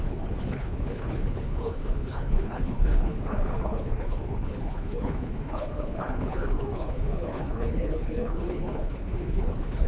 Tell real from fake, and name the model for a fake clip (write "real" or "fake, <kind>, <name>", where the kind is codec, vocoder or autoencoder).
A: fake, codec, HILCodec